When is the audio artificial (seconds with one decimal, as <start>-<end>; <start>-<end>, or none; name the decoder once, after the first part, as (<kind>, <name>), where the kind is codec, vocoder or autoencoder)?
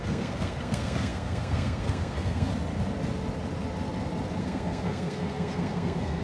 0.0-2.5 (codec, SNAC); 4.4-6.2